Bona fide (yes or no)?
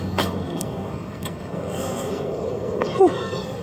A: no